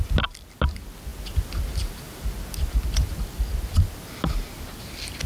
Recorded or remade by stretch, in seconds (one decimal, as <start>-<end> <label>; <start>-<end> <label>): 0.0-5.3 recorded